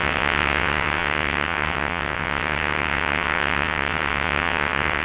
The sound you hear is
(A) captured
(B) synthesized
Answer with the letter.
B